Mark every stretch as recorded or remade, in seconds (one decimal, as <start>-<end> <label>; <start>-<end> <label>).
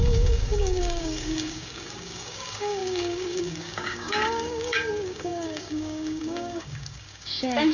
0.0-7.7 remade